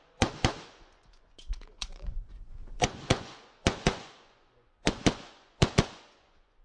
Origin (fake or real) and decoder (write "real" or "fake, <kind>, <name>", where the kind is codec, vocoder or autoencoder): fake, vocoder, Vocos